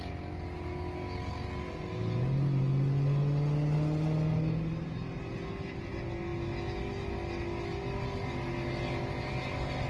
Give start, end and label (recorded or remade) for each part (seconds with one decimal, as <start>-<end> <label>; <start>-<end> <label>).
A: 0.0-9.9 recorded